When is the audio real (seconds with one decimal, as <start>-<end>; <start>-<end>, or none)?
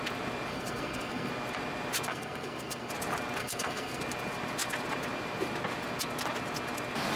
0.0-0.5; 1.3-2.1; 2.9-3.4; 4.0-7.2